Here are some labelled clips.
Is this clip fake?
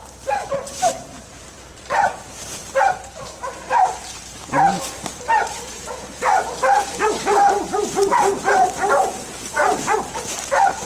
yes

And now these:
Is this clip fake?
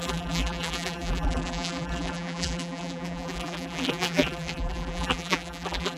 yes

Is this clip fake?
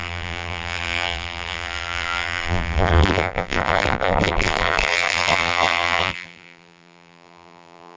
yes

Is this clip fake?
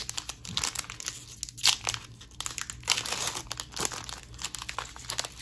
no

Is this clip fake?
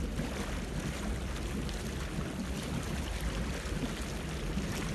no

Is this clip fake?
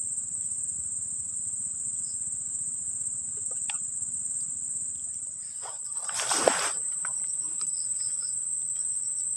yes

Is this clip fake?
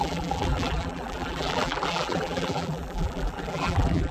yes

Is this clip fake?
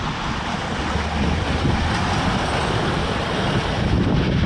no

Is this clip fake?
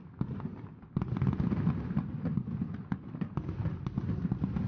no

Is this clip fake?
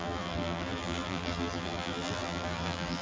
yes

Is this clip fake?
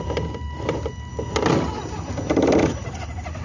no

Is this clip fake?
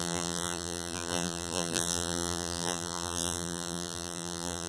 yes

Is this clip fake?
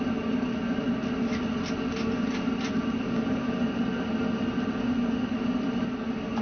no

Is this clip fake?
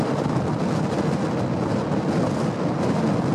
no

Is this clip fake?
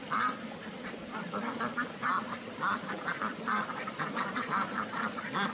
no